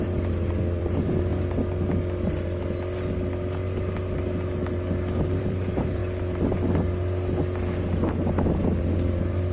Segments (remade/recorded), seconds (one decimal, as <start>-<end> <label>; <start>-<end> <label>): 0.0-1.3 remade; 1.3-5.2 recorded; 5.2-6.0 remade; 6.0-8.8 recorded; 8.8-9.5 remade